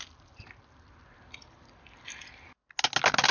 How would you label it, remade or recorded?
recorded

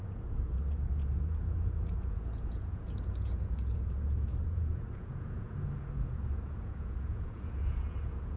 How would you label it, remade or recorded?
remade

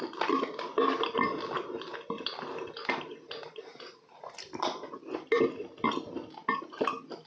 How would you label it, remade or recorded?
recorded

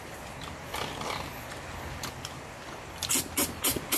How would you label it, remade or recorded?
recorded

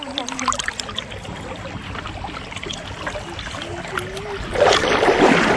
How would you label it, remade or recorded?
recorded